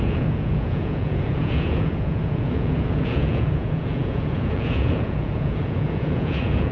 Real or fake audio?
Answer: fake